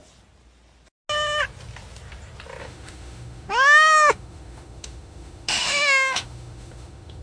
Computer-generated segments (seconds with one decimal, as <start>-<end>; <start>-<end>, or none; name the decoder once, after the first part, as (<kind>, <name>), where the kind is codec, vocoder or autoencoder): 2.6-7.2 (autoencoder, DAC-VAE)